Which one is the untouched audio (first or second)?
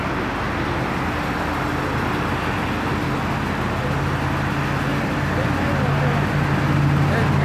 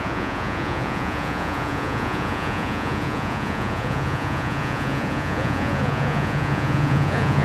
first